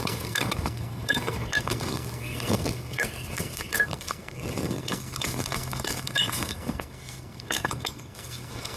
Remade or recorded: remade